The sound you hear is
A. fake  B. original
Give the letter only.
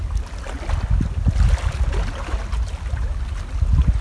B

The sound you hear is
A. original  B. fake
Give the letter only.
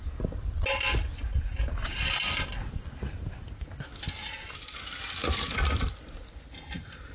A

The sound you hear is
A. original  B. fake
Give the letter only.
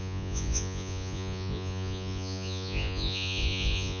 B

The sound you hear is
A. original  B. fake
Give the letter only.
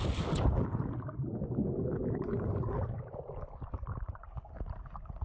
A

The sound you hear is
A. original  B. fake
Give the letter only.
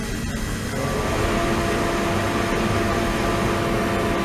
A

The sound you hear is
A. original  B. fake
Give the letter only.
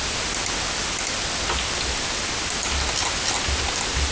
A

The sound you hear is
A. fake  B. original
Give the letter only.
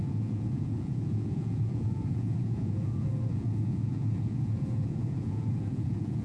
A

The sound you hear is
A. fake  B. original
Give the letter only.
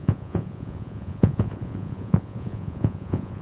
A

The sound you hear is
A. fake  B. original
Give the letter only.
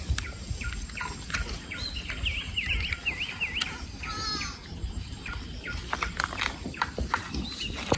B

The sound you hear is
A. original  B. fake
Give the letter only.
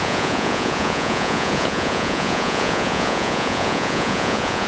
B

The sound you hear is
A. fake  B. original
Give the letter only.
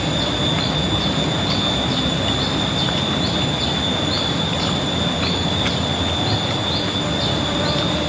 B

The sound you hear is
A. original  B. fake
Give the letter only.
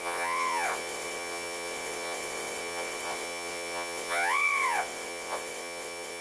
B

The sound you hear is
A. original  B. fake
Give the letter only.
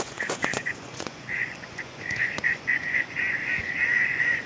B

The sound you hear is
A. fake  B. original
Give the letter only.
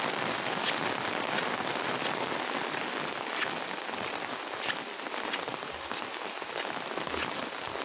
B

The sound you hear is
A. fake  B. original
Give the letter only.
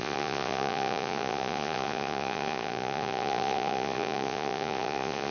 A